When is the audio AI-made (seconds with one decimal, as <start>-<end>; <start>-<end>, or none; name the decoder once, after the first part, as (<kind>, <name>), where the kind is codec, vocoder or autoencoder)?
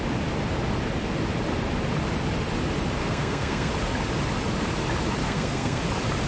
3.0-3.7 (codec, SNAC); 5.2-5.8